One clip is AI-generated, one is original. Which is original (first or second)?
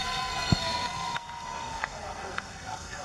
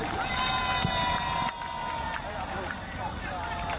second